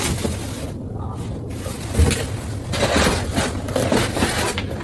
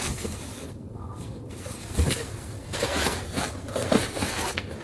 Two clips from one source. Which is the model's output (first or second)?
second